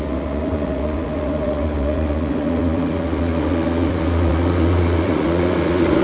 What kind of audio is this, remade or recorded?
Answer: remade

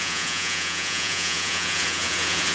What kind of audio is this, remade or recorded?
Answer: remade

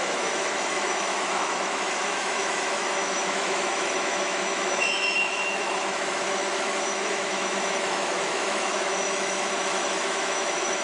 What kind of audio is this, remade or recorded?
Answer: remade